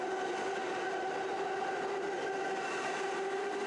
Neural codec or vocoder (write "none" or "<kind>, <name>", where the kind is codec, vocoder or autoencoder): none